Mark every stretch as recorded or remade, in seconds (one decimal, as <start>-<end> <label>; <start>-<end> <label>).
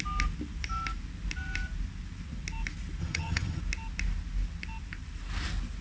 0.0-3.0 recorded; 3.0-3.6 remade; 3.6-5.8 recorded